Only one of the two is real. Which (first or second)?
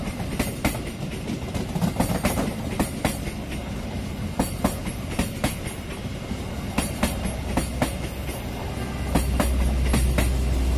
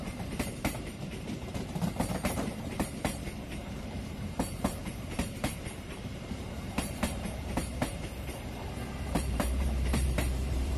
first